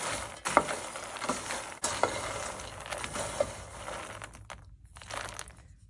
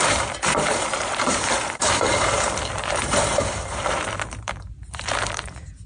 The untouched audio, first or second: first